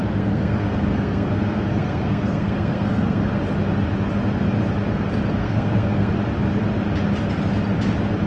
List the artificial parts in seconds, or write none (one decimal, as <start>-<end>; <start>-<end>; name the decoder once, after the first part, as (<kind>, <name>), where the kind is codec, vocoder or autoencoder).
0.0-3.4 (codec, SNAC); 5.4-6.1